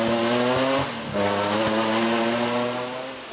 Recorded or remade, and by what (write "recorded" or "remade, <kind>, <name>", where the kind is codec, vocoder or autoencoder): recorded